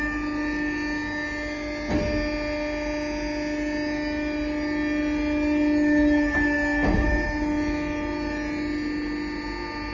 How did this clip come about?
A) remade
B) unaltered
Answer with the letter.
B